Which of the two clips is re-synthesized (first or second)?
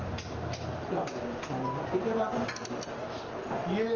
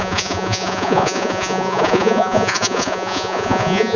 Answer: second